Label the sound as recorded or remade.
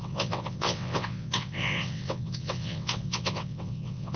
remade